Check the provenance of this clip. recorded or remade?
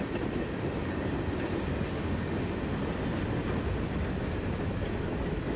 recorded